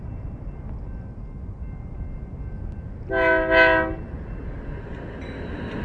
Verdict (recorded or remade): recorded